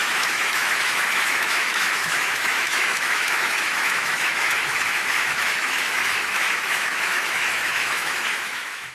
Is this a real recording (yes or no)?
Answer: no